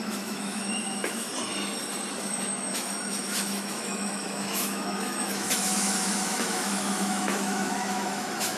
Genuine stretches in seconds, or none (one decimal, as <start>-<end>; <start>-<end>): 1.3-2.1